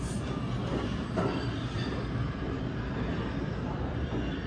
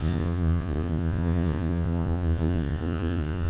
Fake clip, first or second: second